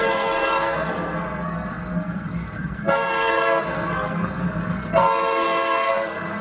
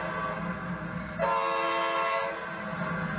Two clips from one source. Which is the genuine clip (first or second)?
second